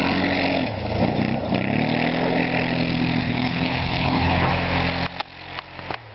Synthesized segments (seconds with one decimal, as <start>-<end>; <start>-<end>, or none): 3.2-4.5